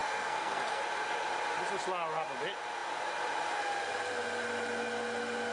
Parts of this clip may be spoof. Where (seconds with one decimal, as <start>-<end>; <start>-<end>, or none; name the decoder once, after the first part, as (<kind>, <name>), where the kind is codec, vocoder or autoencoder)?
0.0-0.8 (codec, SNAC)